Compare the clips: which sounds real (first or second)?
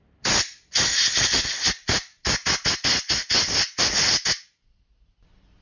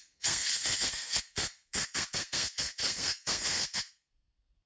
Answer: first